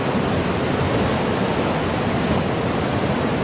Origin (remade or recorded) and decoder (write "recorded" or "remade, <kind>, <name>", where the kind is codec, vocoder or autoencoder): recorded